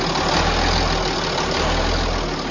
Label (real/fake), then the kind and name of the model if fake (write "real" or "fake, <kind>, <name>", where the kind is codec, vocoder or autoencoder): real